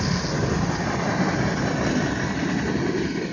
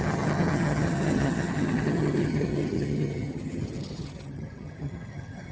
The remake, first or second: second